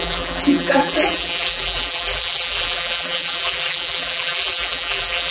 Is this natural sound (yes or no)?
no